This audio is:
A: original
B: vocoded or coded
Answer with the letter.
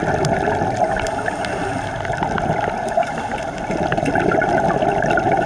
A